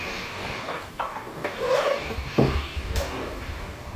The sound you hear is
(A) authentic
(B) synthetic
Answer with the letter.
B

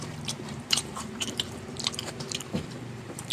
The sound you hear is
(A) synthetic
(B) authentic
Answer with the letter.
A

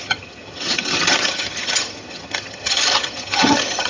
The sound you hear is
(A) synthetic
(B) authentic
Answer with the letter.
A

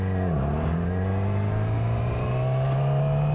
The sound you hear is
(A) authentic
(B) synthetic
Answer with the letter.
A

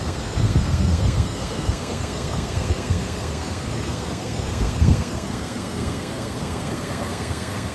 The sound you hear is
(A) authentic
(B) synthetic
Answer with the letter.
B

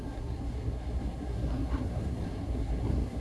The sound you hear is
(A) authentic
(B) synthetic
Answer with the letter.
B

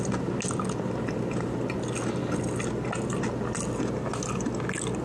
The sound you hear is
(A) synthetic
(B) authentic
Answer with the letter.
B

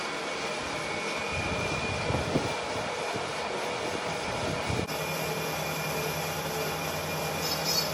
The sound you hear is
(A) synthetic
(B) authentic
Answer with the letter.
B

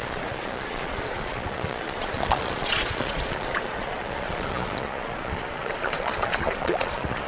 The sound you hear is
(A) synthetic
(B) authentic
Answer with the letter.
A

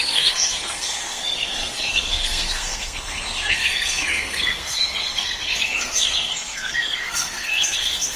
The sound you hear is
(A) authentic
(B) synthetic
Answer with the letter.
B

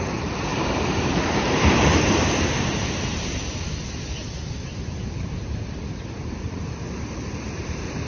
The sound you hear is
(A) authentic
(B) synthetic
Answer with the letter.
B